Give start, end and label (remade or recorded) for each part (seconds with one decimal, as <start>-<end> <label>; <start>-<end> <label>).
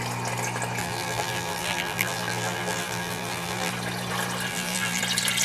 0.0-0.8 recorded; 0.8-3.7 remade; 3.7-4.5 recorded; 4.5-5.0 remade; 5.0-5.4 recorded